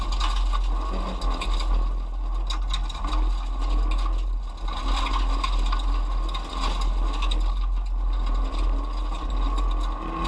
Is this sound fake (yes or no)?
no